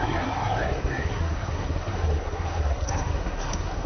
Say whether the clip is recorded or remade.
remade